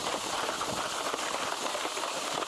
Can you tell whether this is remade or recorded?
recorded